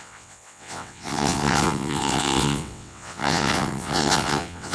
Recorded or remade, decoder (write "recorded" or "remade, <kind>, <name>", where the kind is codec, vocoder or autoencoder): remade, vocoder, WaveNeXt